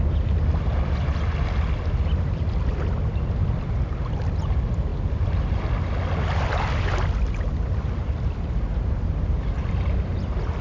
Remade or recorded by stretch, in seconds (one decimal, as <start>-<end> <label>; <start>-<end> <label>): 0.0-10.6 recorded

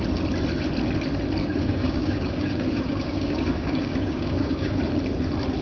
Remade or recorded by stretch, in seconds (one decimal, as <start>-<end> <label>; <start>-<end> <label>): 0.0-1.4 recorded; 1.4-4.8 remade; 4.8-5.6 recorded

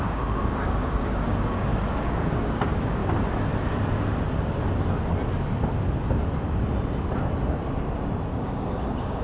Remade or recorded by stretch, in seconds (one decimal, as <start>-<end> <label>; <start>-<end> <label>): 0.0-3.0 remade; 3.0-8.3 recorded; 8.3-9.2 remade

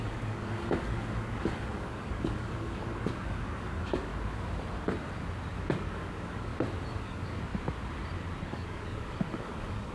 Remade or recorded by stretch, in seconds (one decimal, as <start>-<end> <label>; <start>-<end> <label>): 0.0-4.1 remade; 4.1-5.6 recorded; 5.6-6.5 remade; 6.5-7.0 recorded; 7.0-7.5 remade; 7.5-8.4 recorded; 8.4-9.9 remade

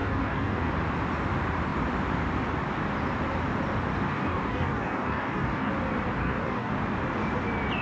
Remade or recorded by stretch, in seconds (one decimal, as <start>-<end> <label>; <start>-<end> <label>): 0.0-0.7 remade; 0.7-4.1 recorded; 4.1-5.7 remade; 5.7-6.2 recorded; 6.2-6.7 remade; 6.7-7.8 recorded

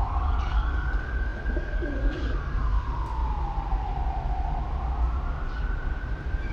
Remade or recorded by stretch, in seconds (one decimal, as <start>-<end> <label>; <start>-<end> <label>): 0.0-3.2 remade; 3.2-6.5 recorded

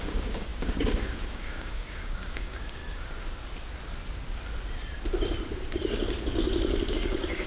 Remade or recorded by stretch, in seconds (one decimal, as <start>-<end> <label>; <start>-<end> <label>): 0.0-2.8 remade; 2.8-6.9 recorded; 6.9-7.5 remade

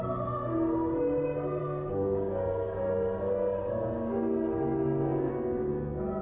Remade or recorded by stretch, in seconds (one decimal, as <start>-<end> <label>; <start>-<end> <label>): 0.0-1.6 recorded; 1.6-5.3 remade; 5.3-6.2 recorded